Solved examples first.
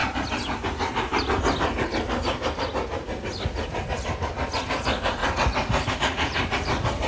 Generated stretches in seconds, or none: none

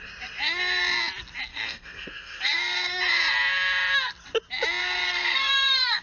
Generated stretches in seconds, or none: 1.5-3.0; 4.8-6.0

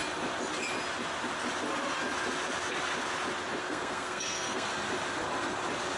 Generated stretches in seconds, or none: 3.6-4.7

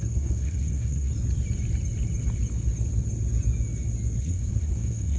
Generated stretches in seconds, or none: 0.0-1.1; 4.2-5.2